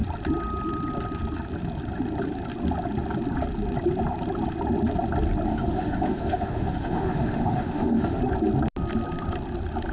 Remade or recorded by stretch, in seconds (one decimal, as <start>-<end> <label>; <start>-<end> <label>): 0.0-5.5 recorded; 5.5-8.2 remade; 8.2-9.9 recorded